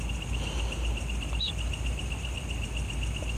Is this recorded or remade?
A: recorded